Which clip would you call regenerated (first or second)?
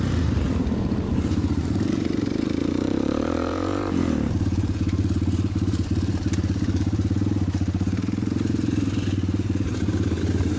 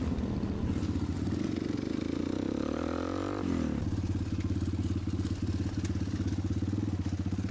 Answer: first